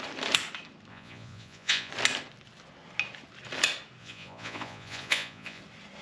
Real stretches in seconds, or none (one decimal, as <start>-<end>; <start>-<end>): 0.0-0.9; 1.9-4.0; 5.6-6.0